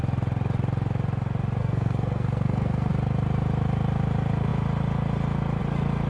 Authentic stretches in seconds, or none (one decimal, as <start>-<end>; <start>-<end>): 0.0-1.6; 2.9-6.1